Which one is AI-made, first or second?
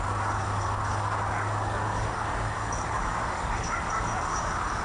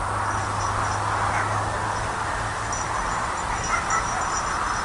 first